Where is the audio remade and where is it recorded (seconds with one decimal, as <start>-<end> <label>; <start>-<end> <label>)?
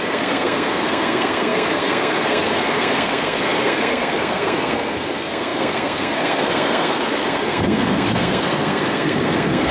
0.0-9.7 remade